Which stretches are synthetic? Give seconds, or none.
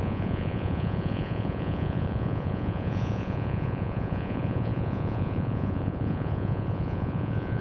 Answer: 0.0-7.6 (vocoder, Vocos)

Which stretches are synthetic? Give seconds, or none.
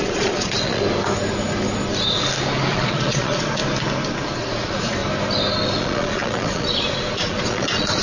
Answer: 0.0-0.8 (vocoder, Vocos); 2.7-3.6; 4.4-5.0; 5.8-8.0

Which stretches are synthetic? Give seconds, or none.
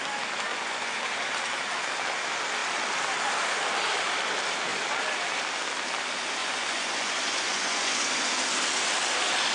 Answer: 0.5-1.0 (vocoder, Vocos); 6.4-8.3